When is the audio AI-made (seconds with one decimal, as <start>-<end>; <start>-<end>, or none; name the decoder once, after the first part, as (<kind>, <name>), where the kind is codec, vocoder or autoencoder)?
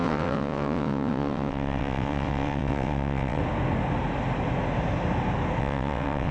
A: 0.0-3.4 (vocoder, WaveNeXt); 5.6-6.3